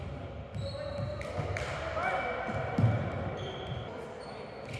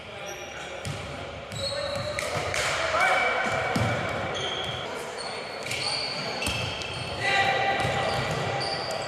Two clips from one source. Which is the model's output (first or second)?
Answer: second